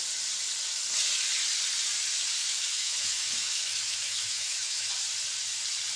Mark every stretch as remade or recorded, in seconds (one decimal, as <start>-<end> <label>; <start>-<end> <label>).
0.0-2.4 recorded; 2.4-4.9 remade; 4.9-6.0 recorded